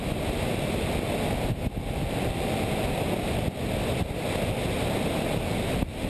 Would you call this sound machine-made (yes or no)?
no